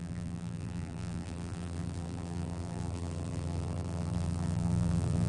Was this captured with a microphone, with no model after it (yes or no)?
no